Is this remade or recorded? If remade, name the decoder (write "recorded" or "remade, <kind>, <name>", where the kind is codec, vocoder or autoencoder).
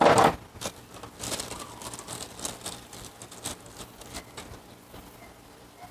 recorded